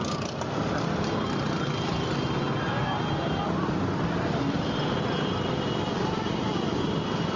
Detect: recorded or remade recorded